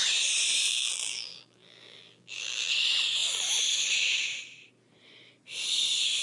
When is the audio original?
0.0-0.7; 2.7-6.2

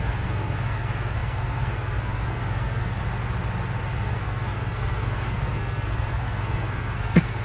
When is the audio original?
3.0-4.0

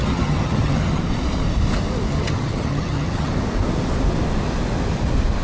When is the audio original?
1.0-2.1; 3.3-5.4